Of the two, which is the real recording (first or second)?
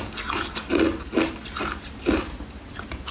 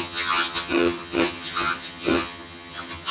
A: first